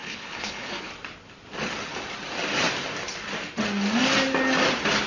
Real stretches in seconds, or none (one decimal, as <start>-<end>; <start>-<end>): 0.9-5.1

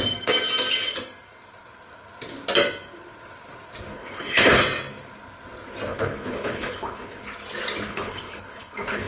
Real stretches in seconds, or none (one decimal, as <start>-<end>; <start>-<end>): 0.0-3.9; 4.6-5.9; 7.2-7.9